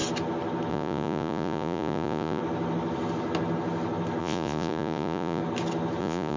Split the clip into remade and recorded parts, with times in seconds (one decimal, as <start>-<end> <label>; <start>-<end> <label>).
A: 0.0-0.7 recorded; 0.7-2.4 remade; 2.4-4.2 recorded; 4.2-5.4 remade; 5.4-6.0 recorded; 6.0-6.4 remade